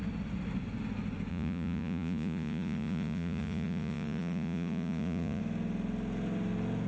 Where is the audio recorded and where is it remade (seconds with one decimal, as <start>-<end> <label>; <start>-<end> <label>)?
0.0-1.3 recorded; 1.3-5.4 remade; 5.4-6.9 recorded